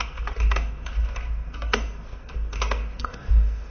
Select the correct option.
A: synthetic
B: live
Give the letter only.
A